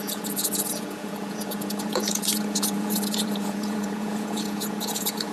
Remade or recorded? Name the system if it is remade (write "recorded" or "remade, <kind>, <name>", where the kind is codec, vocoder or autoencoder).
remade, vocoder, Vocos